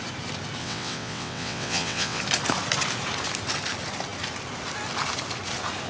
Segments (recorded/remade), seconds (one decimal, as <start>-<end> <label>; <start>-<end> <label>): 0.0-0.6 recorded; 0.6-2.2 remade; 2.2-5.9 recorded